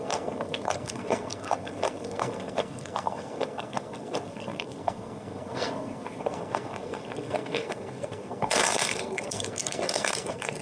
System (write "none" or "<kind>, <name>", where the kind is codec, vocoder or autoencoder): codec, SNAC